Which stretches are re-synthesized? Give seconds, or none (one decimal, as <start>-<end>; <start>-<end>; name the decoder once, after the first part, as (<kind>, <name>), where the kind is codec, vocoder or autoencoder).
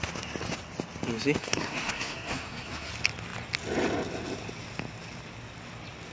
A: 1.4-2.9 (codec, SNAC)